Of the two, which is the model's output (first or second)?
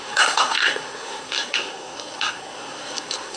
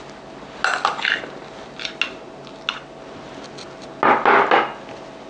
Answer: first